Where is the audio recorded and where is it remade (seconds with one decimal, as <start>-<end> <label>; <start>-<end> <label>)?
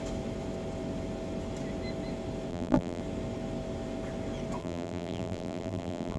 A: 0.0-2.5 recorded; 2.5-3.0 remade; 3.0-4.6 recorded; 4.6-6.2 remade